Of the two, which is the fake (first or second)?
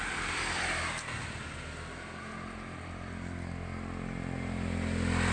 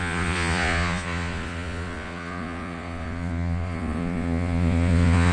second